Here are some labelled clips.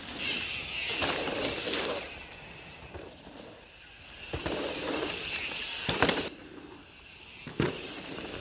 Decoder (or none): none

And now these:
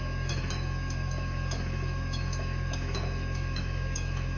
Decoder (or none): autoencoder, DAC-VAE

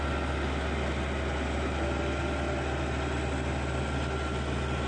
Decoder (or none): none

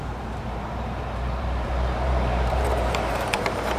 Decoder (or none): vocoder, BigVGAN v2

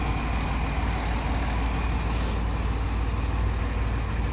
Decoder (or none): none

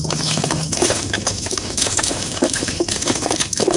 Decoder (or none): autoencoder, DAC-VAE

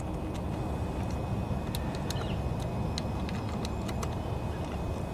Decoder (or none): none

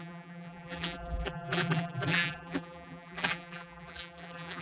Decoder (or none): vocoder, BigVGAN v2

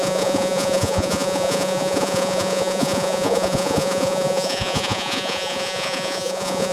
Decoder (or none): vocoder, Vocos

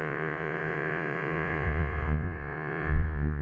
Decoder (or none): vocoder, Vocos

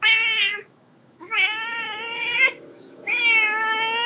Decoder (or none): autoencoder, DAC-VAE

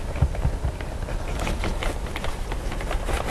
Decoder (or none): none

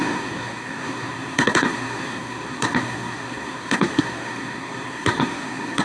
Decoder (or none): codec, SNAC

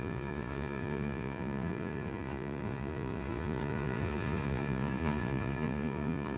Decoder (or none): vocoder, Vocos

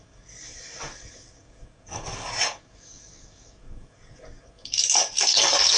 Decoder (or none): codec, DAC